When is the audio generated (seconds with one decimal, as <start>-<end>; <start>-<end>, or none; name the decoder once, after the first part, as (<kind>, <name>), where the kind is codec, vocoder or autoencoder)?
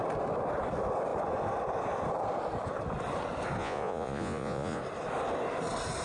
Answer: 3.6-4.8 (vocoder, Vocos)